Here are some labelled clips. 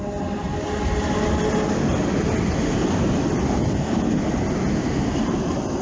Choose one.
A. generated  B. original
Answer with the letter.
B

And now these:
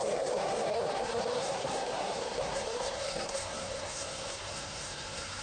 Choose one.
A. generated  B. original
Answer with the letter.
A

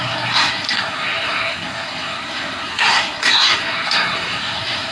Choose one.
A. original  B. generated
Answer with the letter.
B